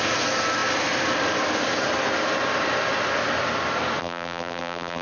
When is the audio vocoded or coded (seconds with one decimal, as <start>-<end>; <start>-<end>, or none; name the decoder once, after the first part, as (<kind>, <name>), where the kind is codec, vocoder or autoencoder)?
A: 4.0-5.0 (vocoder, BigVGAN v2)